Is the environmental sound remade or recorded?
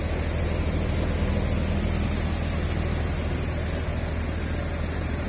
recorded